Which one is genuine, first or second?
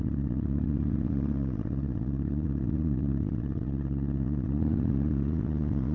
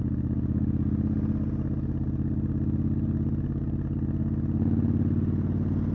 second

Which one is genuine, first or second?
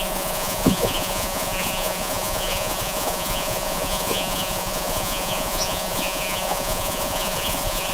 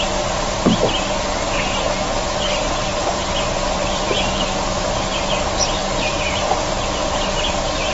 second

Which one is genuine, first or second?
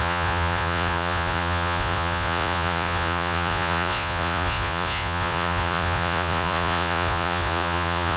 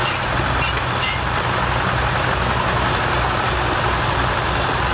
second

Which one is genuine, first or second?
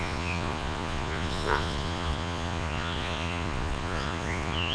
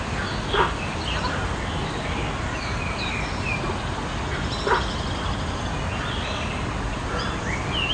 second